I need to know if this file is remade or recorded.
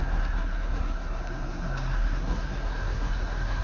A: remade